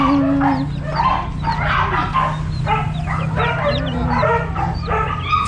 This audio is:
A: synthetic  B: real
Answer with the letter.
B